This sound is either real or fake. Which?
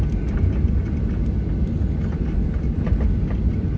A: real